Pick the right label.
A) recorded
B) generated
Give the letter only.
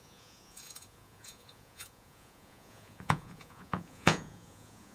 B